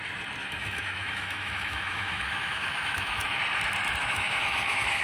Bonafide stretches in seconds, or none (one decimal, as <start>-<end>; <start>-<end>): 0.0-0.4; 3.4-4.0